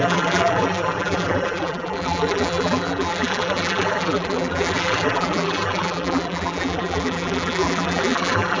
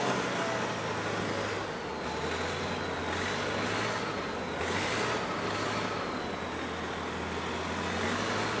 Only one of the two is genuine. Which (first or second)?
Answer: second